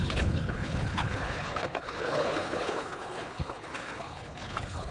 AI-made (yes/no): yes